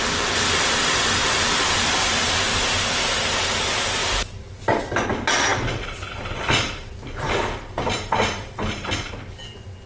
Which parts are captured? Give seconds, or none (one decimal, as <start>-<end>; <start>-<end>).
0.0-9.9